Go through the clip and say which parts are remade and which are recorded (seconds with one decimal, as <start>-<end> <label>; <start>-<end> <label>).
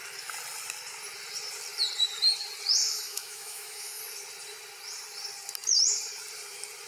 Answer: 0.0-2.8 recorded; 2.8-4.0 remade; 4.0-6.9 recorded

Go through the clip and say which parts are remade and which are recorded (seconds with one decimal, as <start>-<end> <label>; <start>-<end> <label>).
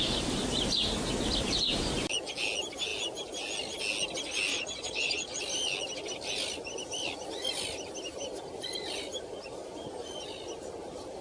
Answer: 0.0-4.5 recorded; 4.5-5.4 remade; 5.4-11.2 recorded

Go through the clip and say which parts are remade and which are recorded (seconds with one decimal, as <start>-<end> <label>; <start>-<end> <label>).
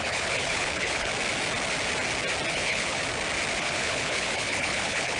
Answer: 0.0-1.1 remade; 1.1-2.5 recorded; 2.5-3.0 remade; 3.0-3.6 recorded; 3.6-5.2 remade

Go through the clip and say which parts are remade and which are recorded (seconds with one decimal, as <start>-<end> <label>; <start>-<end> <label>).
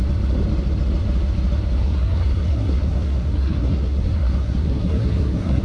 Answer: 0.0-1.8 recorded; 1.8-5.6 remade